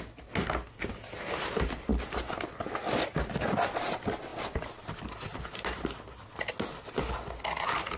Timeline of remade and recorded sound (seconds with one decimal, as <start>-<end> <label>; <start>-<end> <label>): 0.0-8.0 recorded